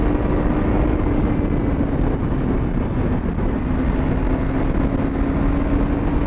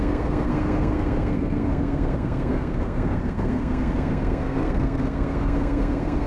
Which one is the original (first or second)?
first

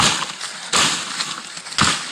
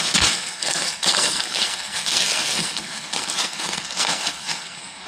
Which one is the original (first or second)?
first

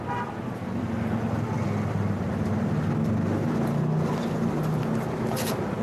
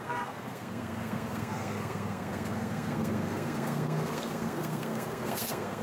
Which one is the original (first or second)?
first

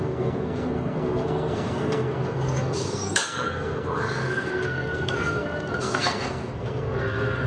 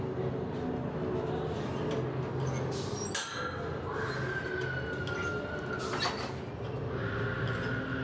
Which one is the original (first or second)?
second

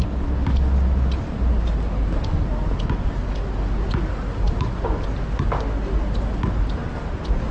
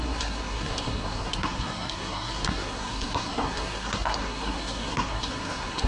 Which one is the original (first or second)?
first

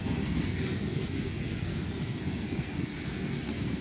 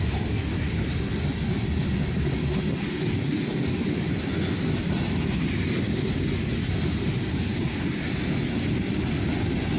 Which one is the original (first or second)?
second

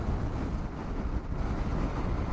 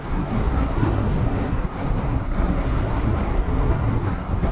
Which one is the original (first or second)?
first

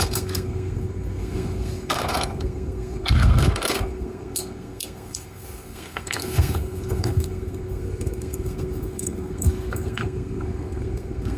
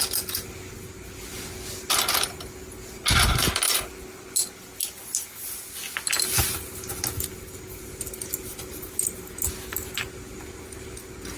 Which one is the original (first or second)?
second